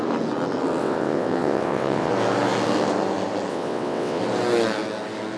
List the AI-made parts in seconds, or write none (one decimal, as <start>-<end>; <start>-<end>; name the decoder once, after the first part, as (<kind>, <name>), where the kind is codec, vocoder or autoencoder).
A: 0.8-2.1 (vocoder, WaveNeXt); 3.5-4.2